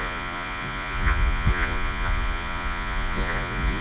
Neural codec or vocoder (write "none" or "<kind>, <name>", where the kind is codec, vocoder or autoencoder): vocoder, Vocos